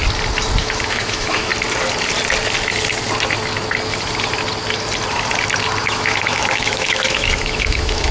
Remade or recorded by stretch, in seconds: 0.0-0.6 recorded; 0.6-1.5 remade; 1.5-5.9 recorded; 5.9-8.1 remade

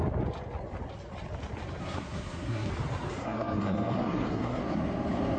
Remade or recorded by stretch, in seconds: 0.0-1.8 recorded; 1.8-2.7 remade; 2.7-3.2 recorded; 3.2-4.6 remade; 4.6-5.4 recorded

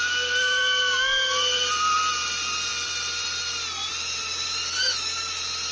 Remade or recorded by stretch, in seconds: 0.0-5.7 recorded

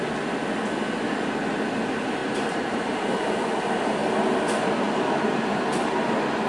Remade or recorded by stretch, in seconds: 0.0-2.2 recorded; 2.2-3.6 remade; 3.6-6.5 recorded

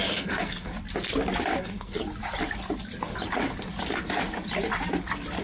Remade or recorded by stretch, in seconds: 0.0-0.7 remade; 0.7-1.6 recorded; 1.6-2.1 remade; 2.1-5.4 recorded